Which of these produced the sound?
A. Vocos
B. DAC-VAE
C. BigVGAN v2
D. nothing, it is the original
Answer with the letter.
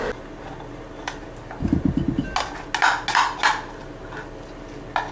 D